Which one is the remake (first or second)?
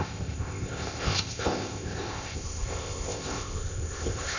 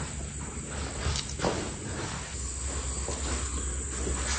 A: first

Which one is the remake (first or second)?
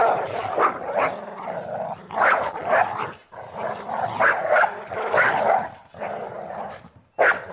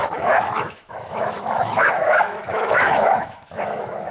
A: second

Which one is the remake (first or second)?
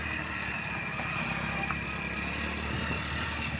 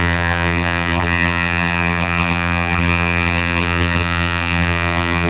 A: second